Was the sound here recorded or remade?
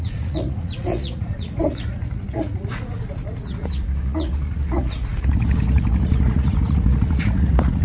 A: remade